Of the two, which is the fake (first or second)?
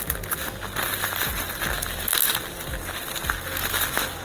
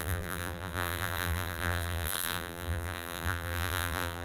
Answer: second